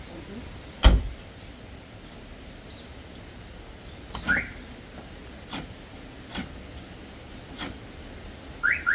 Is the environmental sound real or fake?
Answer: real